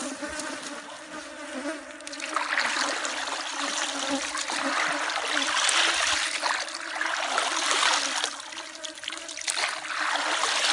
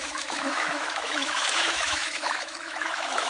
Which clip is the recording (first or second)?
first